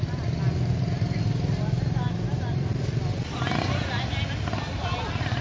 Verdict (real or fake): real